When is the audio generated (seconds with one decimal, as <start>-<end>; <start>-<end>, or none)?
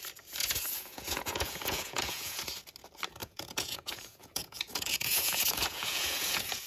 0.4-2.4; 3.2-6.7